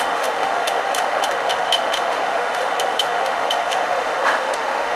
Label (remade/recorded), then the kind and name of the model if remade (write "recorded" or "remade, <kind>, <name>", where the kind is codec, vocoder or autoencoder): remade, autoencoder, DAC-VAE